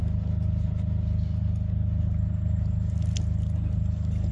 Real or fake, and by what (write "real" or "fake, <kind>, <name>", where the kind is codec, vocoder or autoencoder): real